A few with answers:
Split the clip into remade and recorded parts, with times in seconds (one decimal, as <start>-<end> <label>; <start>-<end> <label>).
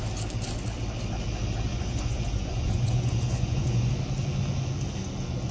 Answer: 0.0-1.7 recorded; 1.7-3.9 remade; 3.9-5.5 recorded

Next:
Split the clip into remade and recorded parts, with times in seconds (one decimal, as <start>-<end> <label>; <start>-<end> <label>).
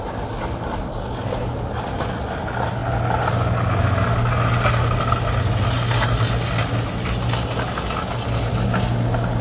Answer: 0.0-9.4 recorded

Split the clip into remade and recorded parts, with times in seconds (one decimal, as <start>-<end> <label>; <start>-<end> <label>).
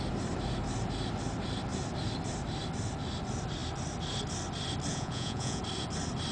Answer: 0.0-4.9 recorded; 4.9-5.6 remade; 5.6-6.3 recorded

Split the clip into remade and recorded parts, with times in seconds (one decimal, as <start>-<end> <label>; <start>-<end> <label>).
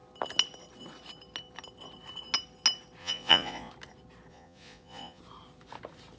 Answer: 0.0-3.0 recorded; 3.0-3.7 remade; 3.7-4.3 recorded; 4.3-5.2 remade; 5.2-6.2 recorded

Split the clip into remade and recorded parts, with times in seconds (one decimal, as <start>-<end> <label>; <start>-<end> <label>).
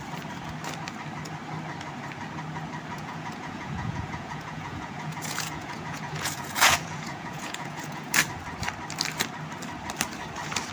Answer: 0.0-2.9 recorded; 2.9-8.1 remade; 8.1-10.7 recorded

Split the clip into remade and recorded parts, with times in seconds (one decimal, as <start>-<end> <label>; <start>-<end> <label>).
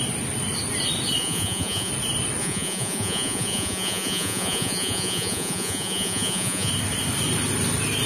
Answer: 0.0-1.2 recorded; 1.2-1.9 remade; 1.9-2.4 recorded; 2.4-6.7 remade; 6.7-8.1 recorded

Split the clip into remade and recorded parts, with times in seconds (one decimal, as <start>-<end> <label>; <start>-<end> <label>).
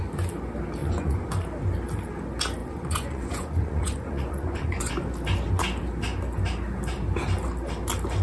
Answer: 0.0-0.8 recorded; 0.8-1.3 remade; 1.3-2.6 recorded; 2.6-4.9 remade; 4.9-8.2 recorded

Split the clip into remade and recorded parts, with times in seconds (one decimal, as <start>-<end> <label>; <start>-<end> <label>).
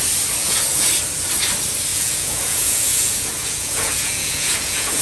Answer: 0.0-0.4 recorded; 0.4-0.9 remade; 0.9-1.9 recorded; 1.9-5.0 remade